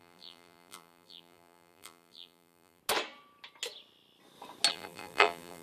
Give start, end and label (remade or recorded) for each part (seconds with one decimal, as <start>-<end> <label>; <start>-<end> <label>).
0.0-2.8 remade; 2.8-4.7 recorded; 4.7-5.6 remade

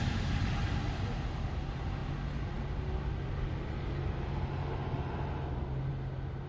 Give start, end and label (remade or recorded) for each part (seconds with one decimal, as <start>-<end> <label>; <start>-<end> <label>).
0.0-6.5 recorded

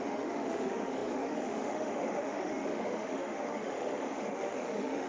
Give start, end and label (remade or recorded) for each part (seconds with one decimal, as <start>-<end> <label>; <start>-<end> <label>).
0.0-5.1 remade

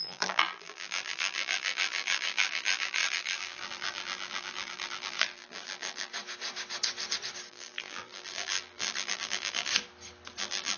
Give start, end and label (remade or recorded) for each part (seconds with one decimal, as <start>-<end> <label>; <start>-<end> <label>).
0.0-6.1 remade; 6.1-7.5 recorded; 7.5-9.7 remade; 9.7-10.4 recorded; 10.4-10.8 remade